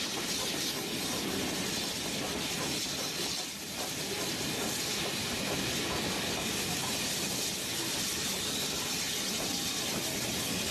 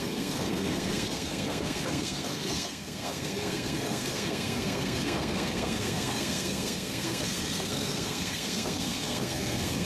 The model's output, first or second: second